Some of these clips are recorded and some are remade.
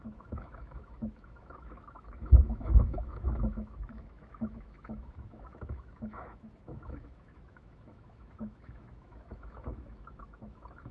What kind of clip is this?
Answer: remade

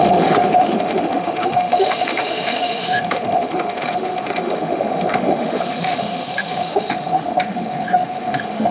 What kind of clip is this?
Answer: remade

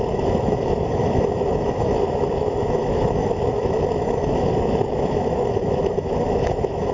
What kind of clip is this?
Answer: remade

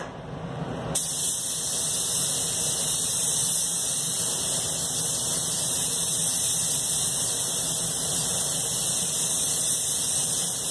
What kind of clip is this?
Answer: recorded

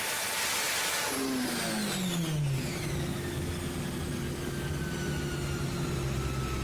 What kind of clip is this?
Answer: recorded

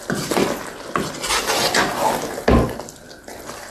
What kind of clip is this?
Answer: recorded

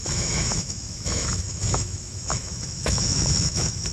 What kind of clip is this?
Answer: remade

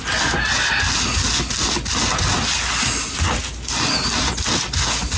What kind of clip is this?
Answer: recorded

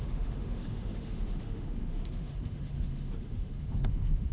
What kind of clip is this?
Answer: remade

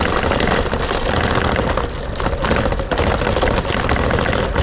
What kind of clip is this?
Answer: recorded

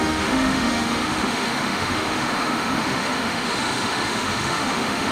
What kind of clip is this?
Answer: remade